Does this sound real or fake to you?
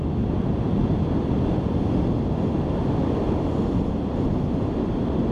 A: real